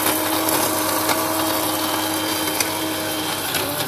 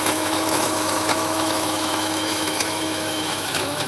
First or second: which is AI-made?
second